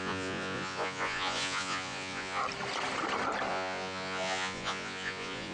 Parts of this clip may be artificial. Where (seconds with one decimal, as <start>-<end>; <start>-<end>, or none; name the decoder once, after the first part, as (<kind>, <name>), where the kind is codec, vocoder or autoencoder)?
0.0-2.4 (vocoder, Vocos); 3.5-5.5